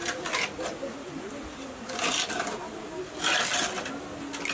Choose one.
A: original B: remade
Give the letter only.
A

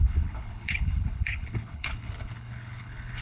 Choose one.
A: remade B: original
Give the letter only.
A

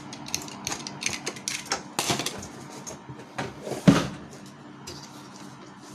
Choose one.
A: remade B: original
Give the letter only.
B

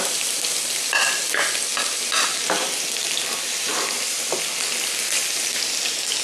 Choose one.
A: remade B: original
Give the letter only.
B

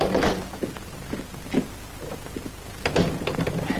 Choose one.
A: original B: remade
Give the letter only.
A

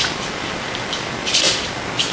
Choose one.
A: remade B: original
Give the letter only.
B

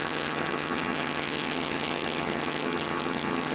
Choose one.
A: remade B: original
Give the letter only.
A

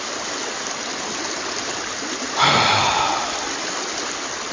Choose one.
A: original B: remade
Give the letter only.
A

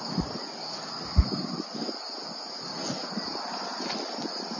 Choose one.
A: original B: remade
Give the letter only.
A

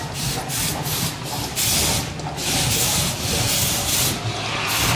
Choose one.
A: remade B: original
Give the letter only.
B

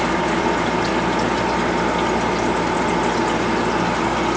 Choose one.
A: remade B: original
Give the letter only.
B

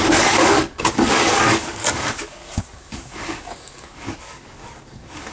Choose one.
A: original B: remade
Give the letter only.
B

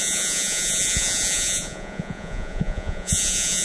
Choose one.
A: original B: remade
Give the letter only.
B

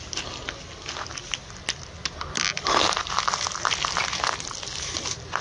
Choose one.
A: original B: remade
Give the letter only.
A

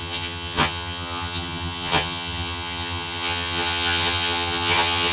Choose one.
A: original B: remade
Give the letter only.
B